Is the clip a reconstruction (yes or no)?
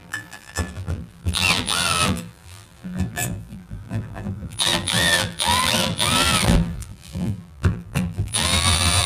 yes